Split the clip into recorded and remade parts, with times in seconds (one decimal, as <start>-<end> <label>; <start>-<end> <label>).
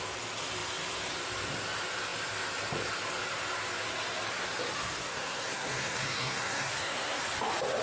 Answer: 0.0-5.1 recorded; 5.1-7.2 remade; 7.2-7.8 recorded